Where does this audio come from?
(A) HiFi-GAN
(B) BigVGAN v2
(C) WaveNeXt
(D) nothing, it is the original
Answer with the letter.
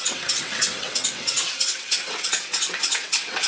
C